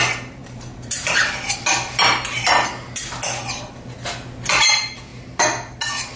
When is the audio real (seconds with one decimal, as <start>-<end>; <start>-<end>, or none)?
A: 0.0-6.2